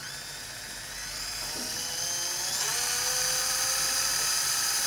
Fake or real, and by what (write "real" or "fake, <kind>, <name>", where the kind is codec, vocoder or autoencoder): real